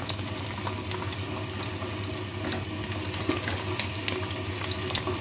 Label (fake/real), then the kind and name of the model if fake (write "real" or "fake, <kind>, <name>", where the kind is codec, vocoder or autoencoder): real